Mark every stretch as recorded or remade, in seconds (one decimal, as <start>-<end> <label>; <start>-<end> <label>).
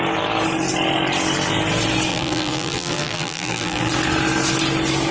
0.0-2.1 recorded; 2.1-3.9 remade; 3.9-5.1 recorded